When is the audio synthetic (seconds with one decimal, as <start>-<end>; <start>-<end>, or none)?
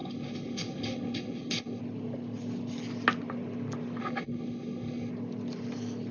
0.0-1.8; 4.0-5.1